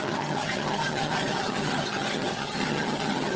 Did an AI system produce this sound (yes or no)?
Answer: yes